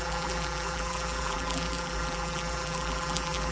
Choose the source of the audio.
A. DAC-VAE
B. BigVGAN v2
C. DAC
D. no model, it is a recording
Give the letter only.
B